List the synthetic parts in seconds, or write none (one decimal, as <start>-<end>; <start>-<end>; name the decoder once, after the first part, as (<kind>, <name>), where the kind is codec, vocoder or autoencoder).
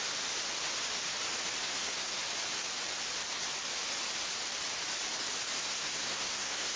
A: 1.6-2.2 (codec, SNAC); 5.6-6.8